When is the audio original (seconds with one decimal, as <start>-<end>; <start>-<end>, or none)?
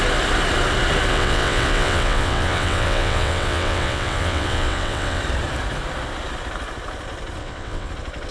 0.0-1.1; 5.2-7.4; 7.9-8.3